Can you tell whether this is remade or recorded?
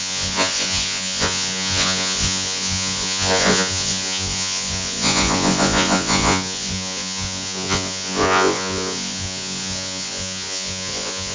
remade